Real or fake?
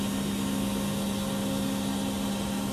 real